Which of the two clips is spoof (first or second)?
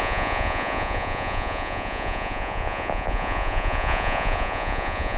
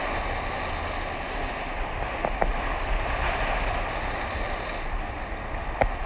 first